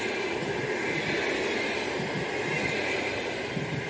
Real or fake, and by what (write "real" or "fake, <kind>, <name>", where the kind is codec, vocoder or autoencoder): real